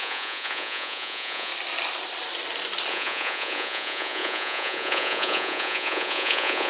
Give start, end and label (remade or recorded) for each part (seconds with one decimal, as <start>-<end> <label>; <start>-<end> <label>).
0.0-1.5 remade; 1.5-2.9 recorded; 2.9-6.7 remade